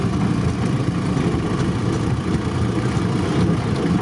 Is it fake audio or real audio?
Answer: real